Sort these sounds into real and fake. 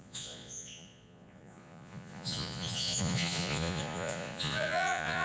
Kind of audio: fake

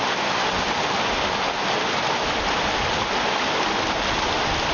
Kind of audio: real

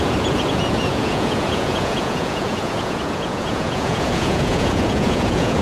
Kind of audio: fake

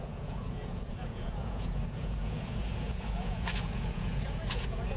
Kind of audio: fake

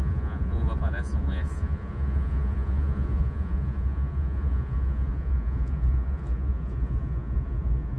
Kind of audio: fake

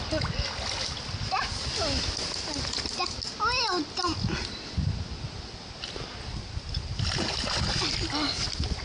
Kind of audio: real